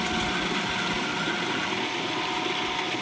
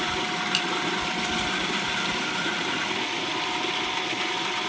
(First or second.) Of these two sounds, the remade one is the second